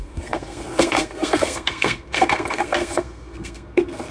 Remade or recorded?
remade